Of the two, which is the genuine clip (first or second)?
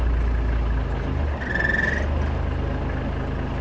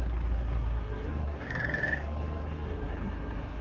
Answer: first